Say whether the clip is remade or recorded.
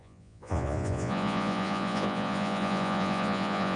remade